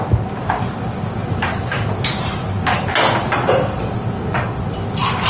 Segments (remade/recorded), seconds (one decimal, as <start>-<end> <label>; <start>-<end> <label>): 0.0-1.2 recorded; 1.2-1.9 remade; 1.9-5.3 recorded